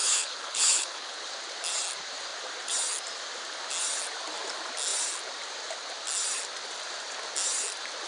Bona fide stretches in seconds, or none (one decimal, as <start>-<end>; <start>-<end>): 1.3-8.1